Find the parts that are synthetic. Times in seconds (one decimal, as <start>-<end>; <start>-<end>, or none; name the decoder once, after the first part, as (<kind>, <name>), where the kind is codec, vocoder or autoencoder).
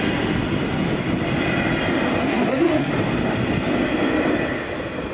2.2-2.9 (codec, SNAC)